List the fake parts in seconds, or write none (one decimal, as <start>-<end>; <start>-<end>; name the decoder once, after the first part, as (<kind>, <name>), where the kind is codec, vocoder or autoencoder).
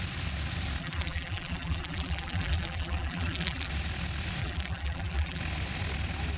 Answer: 0.8-3.7 (vocoder, BigVGAN v2); 4.4-5.4